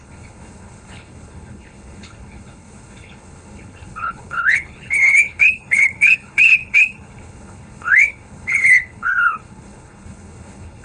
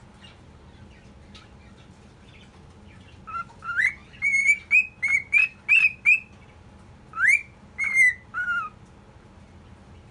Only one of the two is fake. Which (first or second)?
first